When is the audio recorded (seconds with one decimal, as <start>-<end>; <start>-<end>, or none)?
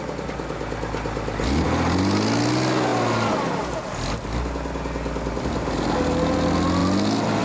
0.0-7.4